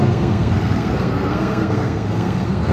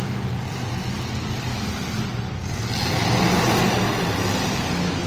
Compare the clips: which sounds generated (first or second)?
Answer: first